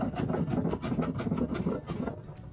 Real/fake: real